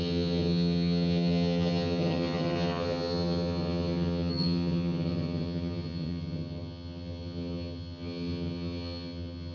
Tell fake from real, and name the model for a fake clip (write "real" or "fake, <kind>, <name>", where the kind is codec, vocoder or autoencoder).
fake, vocoder, HiFi-GAN